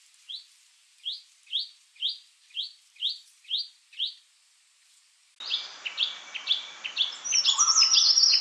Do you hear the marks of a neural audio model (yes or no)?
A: no